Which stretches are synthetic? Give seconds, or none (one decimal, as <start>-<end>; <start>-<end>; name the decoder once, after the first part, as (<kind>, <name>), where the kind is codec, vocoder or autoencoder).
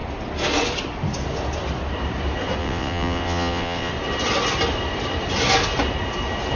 2.6-3.9 (vocoder, WaveNeXt)